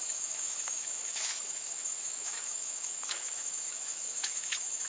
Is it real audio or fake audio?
fake